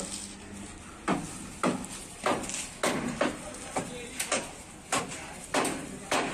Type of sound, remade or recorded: recorded